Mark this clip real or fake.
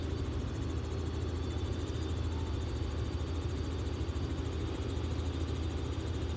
real